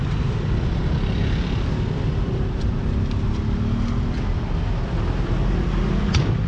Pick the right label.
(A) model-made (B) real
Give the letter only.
B